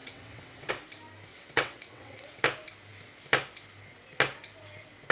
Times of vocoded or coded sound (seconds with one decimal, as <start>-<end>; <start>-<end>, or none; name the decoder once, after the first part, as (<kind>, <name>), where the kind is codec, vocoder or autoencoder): 0.0-0.7 (vocoder, WaveNeXt); 1.3-2.4